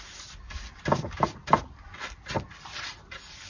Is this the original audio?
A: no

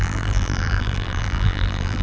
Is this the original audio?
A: no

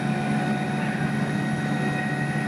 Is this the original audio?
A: yes